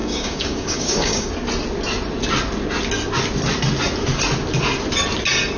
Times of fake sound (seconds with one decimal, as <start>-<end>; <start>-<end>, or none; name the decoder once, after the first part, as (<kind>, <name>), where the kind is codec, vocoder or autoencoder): 0.0-1.3 (codec, DAC)